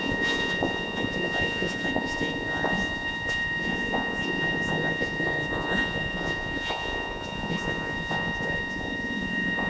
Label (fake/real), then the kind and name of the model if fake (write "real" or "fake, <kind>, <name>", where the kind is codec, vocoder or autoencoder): fake, vocoder, Vocos